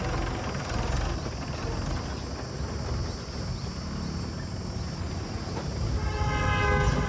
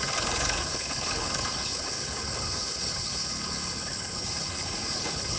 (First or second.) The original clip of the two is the first